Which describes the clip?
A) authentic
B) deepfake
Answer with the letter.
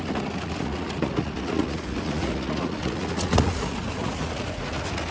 B